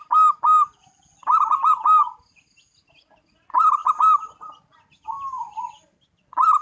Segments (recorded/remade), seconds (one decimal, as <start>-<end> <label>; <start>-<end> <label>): 0.0-6.6 recorded